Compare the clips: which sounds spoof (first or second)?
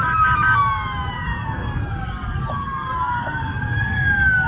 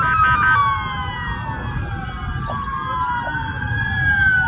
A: first